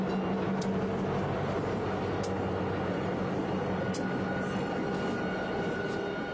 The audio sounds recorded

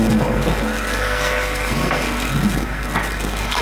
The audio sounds remade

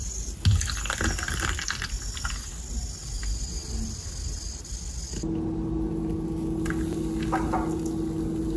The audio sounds recorded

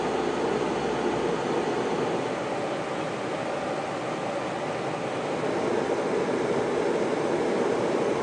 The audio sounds recorded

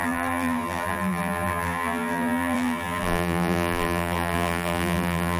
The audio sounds remade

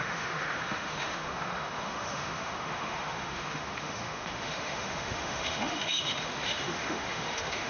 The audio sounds remade